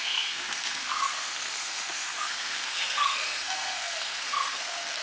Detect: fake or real fake